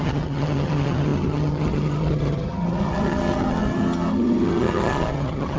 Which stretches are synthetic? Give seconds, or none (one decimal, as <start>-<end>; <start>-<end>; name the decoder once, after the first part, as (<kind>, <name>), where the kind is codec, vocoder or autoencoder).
0.0-5.6 (vocoder, HiFi-GAN)